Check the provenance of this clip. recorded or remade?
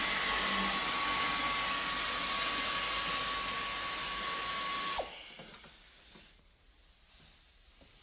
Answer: recorded